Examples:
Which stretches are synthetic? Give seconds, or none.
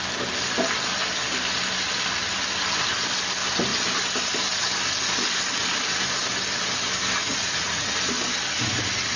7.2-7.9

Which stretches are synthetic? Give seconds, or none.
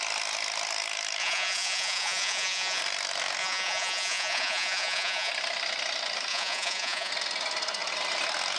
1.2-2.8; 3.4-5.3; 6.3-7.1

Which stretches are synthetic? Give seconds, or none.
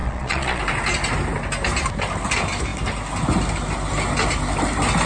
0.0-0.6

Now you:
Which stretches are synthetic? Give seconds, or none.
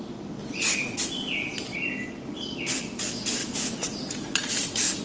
0.4-1.0; 3.4-5.0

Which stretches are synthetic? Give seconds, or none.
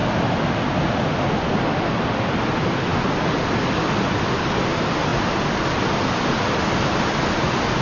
none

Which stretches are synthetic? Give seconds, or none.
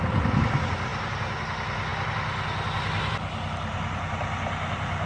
none